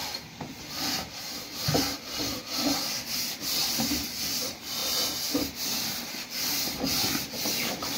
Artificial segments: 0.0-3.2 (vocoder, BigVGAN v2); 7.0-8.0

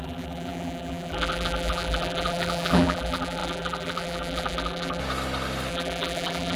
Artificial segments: 0.0-5.0 (vocoder, BigVGAN v2); 5.7-6.6

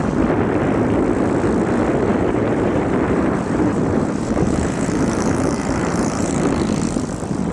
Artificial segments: 2.1-6.3 (vocoder, BigVGAN v2)

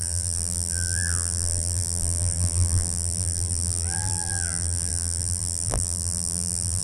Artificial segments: 0.0-6.8 (vocoder, BigVGAN v2)

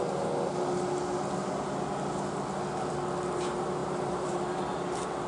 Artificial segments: 3.8-4.4 (vocoder, BigVGAN v2)

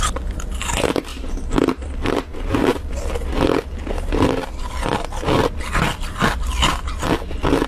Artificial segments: 1.1-2.0 (vocoder, BigVGAN v2)

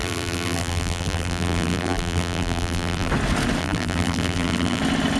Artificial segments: 0.0-3.1 (vocoder, BigVGAN v2); 3.6-4.8

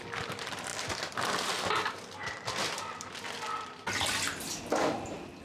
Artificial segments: 0.7-3.1 (vocoder, BigVGAN v2)